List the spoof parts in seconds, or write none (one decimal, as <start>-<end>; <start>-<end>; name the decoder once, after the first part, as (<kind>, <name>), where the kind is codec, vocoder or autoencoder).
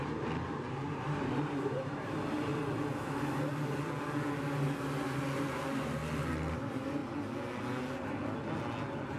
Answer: 0.0-2.5 (vocoder, BigVGAN v2); 5.5-6.0; 6.5-7.0